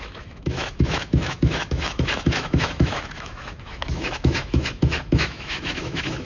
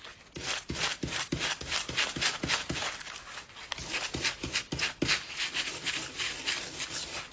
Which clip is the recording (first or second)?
second